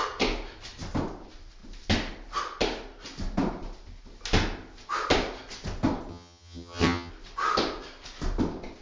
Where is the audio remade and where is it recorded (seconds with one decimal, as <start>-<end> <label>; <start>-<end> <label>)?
0.0-6.1 recorded; 6.1-7.1 remade; 7.1-8.8 recorded